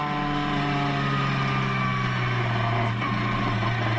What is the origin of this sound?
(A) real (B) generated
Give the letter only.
A